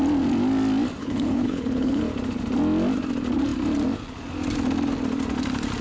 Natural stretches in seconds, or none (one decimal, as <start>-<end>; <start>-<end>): 0.0-1.0; 2.0-5.8